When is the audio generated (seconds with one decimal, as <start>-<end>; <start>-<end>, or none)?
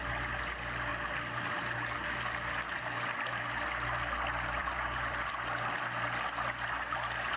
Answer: 4.6-5.3